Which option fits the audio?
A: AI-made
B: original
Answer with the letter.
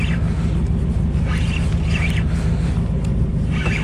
B